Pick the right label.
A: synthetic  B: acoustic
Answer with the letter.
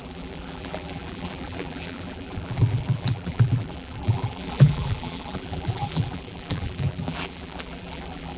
A